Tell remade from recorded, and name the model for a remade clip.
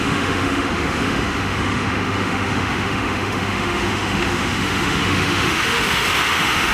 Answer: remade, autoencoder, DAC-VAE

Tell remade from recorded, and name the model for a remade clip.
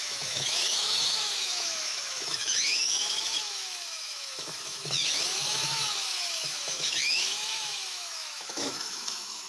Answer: remade, autoencoder, DAC-VAE